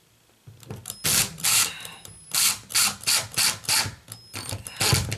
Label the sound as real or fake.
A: real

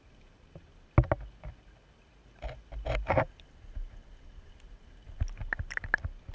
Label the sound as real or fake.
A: real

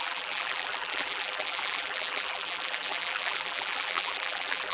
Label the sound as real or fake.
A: fake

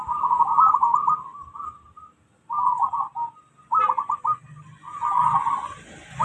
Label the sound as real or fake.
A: real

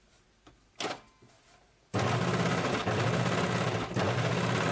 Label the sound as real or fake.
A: real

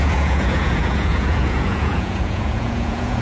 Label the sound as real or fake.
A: fake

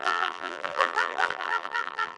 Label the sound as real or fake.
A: fake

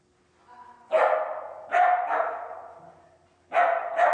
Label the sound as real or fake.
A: real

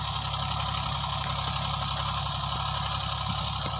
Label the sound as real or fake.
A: real